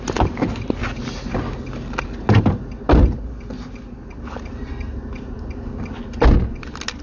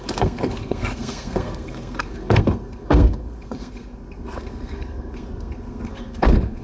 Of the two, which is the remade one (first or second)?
second